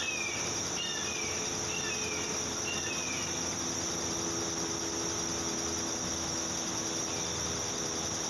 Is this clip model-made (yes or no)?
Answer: no